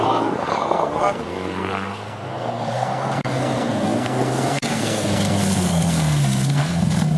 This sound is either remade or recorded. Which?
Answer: remade